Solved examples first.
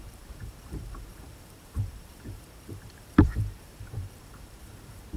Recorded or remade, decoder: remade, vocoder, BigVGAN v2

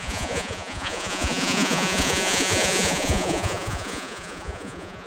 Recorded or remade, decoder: remade, vocoder, Vocos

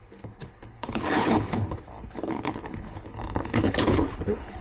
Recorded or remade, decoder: remade, codec, HILCodec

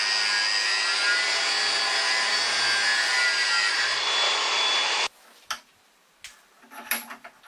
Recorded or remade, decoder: recorded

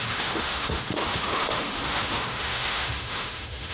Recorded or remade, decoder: remade, autoencoder, DAC-VAE